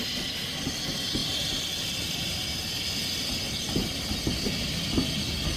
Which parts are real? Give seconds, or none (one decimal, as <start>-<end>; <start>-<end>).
0.0-5.6